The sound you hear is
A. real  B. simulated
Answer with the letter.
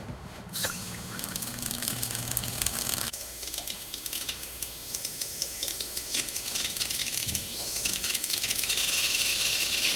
B